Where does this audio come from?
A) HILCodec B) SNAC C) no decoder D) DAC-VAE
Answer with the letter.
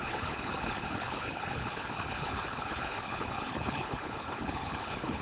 A